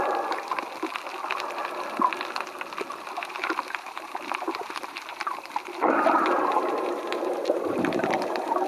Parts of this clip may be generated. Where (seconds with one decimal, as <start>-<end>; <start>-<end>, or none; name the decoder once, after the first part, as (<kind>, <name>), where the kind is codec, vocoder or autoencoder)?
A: 0.0-0.5 (vocoder, BigVGAN v2); 3.0-8.7